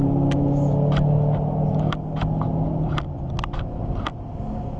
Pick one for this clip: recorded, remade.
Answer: recorded